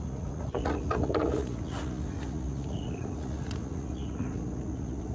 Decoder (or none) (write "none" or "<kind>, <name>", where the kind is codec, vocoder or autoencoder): vocoder, Vocos